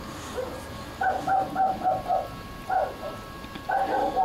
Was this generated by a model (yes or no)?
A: no